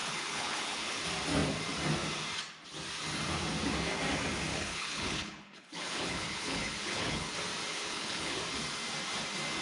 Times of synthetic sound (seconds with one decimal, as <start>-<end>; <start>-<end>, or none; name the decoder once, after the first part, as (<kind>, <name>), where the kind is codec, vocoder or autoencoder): 0.0-1.0 (codec, HILCodec); 4.5-7.3; 7.7-8.4